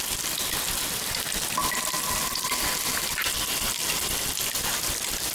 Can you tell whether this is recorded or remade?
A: recorded